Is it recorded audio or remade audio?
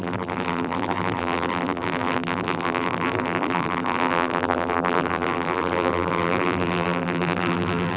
remade